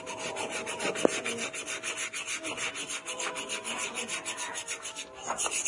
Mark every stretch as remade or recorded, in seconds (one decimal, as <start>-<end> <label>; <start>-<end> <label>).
0.0-5.7 recorded